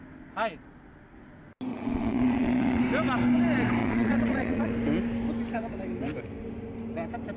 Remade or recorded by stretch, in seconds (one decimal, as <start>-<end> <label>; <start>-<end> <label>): 0.0-1.7 recorded; 1.7-2.8 remade; 2.8-3.8 recorded; 3.8-4.7 remade; 4.7-7.4 recorded